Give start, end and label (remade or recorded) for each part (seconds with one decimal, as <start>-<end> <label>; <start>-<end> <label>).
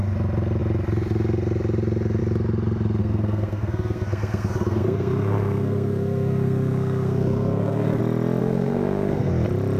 0.0-3.0 recorded; 3.0-8.0 remade; 8.0-8.4 recorded; 8.4-9.3 remade; 9.3-9.8 recorded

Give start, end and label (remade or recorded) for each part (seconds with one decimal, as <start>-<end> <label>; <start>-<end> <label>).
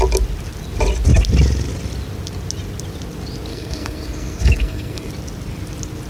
0.0-3.5 recorded; 3.5-5.1 remade; 5.1-6.1 recorded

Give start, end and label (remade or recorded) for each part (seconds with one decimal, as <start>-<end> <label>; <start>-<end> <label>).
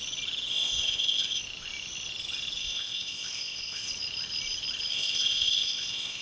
0.0-0.5 recorded; 0.5-1.4 remade; 1.4-2.6 recorded; 2.6-3.9 remade; 3.9-4.9 recorded; 4.9-6.2 remade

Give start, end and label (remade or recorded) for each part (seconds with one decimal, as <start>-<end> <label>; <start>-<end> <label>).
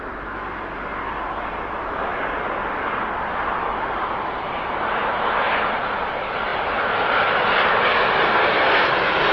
0.0-8.3 recorded; 8.3-8.9 remade; 8.9-9.3 recorded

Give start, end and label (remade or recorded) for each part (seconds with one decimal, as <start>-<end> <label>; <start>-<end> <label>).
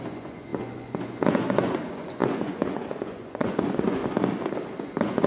0.0-4.0 remade; 4.0-4.8 recorded; 4.8-5.3 remade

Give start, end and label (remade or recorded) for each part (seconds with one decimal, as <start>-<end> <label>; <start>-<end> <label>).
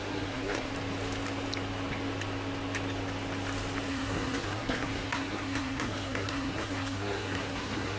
0.0-0.7 remade; 0.7-3.9 recorded; 3.9-8.0 remade